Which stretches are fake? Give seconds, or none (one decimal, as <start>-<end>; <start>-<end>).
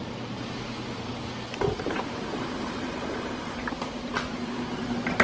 1.1-4.2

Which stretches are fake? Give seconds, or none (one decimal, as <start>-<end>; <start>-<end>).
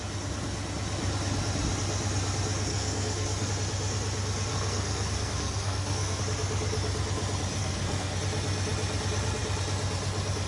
2.7-3.5; 4.5-6.2; 7.6-8.2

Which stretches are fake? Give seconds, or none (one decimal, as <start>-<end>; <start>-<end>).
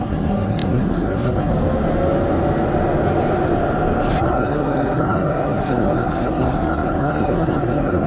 0.0-1.5; 4.1-8.1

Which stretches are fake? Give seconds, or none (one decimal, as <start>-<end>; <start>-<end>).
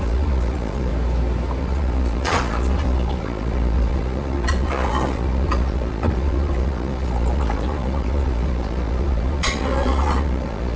0.0-0.9; 1.6-10.8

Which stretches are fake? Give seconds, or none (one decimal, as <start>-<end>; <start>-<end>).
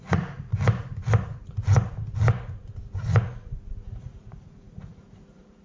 0.0-0.5; 3.9-5.6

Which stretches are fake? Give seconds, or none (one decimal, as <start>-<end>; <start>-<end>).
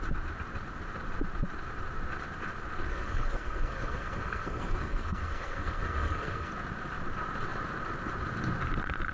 2.9-6.5